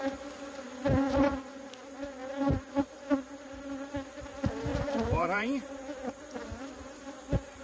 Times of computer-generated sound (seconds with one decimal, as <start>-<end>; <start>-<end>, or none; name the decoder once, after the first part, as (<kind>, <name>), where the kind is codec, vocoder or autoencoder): 4.7-6.2 (vocoder, BigVGAN v2)